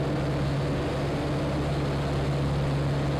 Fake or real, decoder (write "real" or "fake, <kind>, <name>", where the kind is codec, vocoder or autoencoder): real